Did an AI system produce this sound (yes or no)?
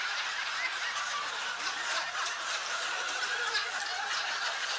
no